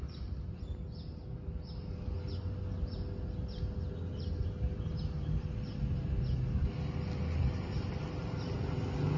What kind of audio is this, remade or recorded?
recorded